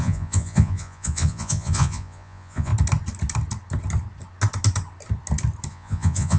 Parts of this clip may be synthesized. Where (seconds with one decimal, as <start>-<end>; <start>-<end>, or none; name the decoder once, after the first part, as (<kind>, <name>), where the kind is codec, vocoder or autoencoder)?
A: 0.0-2.7 (vocoder, Vocos); 5.7-6.4